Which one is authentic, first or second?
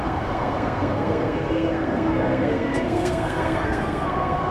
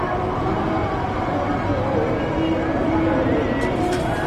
second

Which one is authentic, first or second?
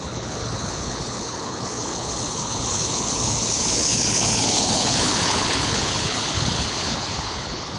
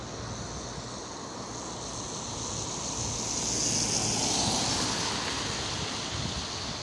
second